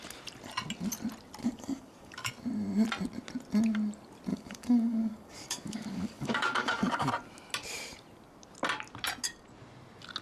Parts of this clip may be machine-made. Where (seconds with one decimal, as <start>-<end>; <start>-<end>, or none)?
1.4-2.3; 4.3-7.1